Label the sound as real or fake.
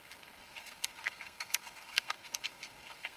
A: fake